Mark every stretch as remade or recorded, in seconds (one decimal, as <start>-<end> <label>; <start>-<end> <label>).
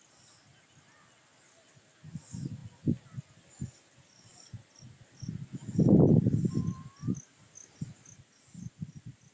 0.0-9.3 recorded